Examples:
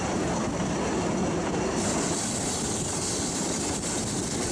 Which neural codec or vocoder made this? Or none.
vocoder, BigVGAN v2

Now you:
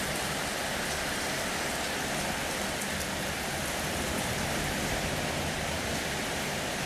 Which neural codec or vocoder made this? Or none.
none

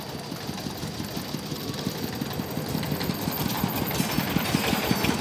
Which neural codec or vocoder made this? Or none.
vocoder, BigVGAN v2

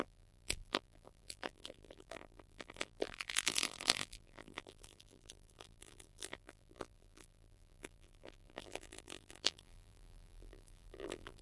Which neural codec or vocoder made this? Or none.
vocoder, BigVGAN v2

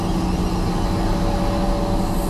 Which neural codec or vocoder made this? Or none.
none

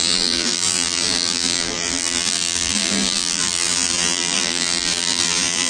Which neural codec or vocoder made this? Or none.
vocoder, BigVGAN v2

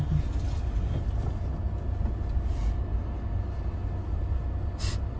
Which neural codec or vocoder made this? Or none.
none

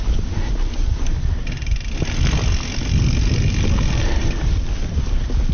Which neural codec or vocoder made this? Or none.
none